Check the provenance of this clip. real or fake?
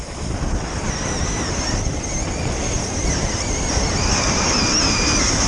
fake